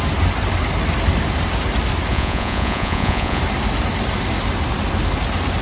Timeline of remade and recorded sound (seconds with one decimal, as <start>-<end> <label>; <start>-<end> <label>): 0.0-2.1 recorded; 2.1-3.4 remade; 3.4-5.6 recorded